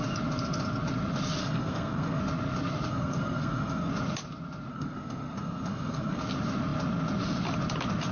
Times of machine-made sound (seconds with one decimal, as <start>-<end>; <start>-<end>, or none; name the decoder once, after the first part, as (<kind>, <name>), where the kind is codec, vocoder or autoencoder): 1.4-2.2 (codec, SNAC); 2.9-3.9; 4.7-6.2